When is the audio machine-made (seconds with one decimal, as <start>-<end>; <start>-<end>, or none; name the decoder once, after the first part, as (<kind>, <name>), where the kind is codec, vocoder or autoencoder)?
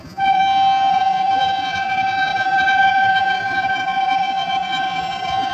0.0-0.4 (vocoder, Vocos); 0.9-5.5